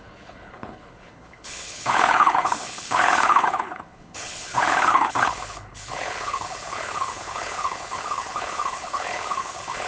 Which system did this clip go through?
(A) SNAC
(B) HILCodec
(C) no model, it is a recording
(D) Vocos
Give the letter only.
B